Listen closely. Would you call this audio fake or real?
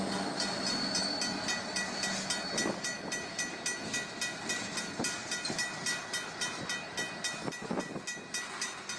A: real